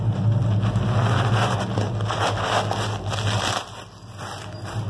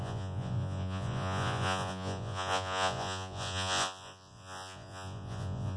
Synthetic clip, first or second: second